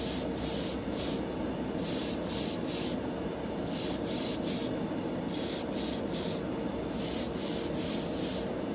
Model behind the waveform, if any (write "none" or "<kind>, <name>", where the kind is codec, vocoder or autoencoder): none